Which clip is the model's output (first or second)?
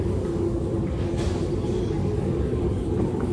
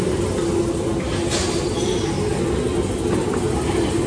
first